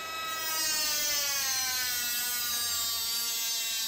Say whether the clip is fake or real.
real